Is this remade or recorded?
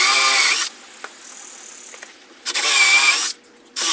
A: recorded